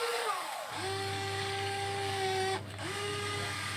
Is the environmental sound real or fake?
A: fake